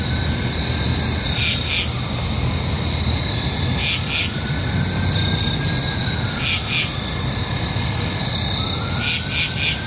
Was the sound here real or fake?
real